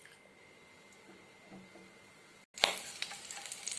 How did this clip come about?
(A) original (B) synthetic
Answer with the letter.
A